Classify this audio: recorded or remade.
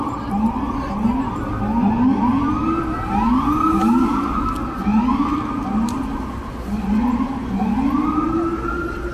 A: recorded